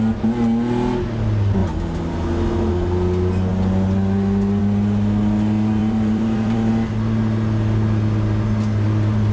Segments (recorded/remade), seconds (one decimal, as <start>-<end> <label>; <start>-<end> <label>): 0.0-5.8 recorded; 5.8-6.7 remade; 6.7-9.3 recorded